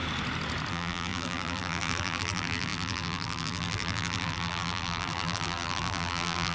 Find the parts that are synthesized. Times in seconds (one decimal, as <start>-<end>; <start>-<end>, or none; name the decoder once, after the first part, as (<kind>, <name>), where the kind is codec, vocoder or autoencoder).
0.7-6.5 (vocoder, BigVGAN v2)